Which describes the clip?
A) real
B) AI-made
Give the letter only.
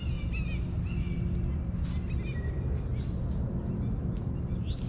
A